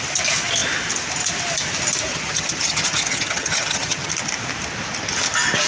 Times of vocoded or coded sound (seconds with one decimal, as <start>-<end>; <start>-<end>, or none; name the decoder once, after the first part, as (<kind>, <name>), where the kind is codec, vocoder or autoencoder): 2.1-4.1 (vocoder, HiFi-GAN)